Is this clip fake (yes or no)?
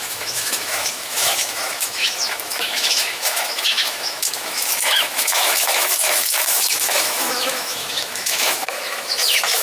yes